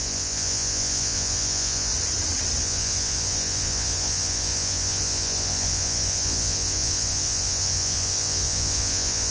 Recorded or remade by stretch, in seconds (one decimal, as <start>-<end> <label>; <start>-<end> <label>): 0.0-1.9 remade; 1.9-2.6 recorded; 2.6-9.3 remade